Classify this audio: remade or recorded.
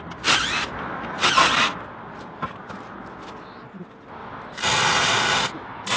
recorded